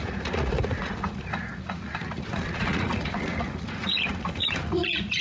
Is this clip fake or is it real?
fake